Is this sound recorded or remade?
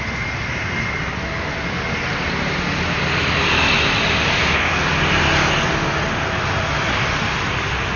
recorded